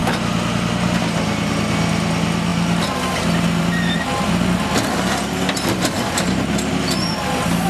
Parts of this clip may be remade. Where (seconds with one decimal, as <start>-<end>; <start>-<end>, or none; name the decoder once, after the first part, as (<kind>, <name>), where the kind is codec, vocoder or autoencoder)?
none